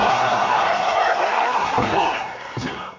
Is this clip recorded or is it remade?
remade